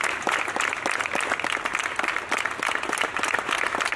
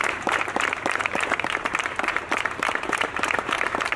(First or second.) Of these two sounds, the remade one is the second